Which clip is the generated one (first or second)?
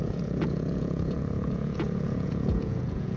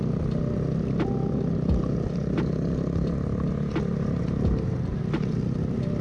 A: first